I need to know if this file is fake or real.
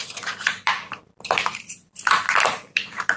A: fake